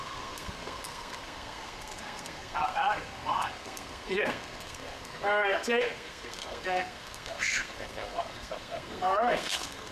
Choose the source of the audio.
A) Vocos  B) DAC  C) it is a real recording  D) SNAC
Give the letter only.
D